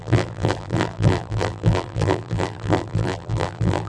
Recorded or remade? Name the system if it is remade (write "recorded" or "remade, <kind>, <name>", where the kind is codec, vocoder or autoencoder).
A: remade, vocoder, BigVGAN v2